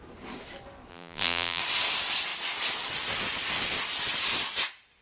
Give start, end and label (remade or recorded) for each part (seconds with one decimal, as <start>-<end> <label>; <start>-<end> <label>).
0.0-0.9 recorded; 0.9-1.6 remade; 1.6-5.0 recorded